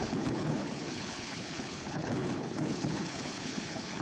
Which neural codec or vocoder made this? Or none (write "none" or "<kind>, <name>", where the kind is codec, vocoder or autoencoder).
codec, HILCodec